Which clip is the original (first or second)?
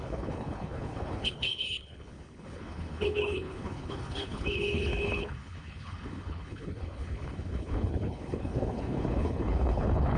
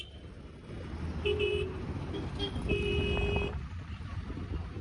second